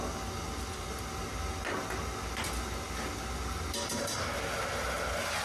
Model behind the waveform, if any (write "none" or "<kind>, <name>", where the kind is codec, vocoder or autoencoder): none